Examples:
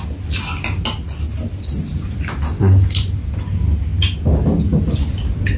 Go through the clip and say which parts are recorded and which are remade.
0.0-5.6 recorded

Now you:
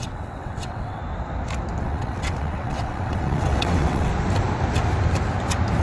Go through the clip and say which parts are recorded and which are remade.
0.0-1.0 remade; 1.0-1.8 recorded; 1.8-4.1 remade; 4.1-5.8 recorded

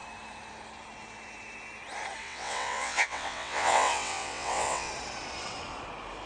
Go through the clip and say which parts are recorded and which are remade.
0.0-2.2 recorded; 2.2-4.9 remade; 4.9-6.3 recorded